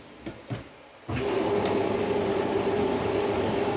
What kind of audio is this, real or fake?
real